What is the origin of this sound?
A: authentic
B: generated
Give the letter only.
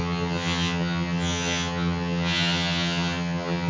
B